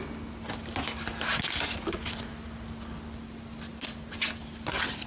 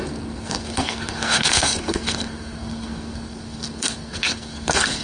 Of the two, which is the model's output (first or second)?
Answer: second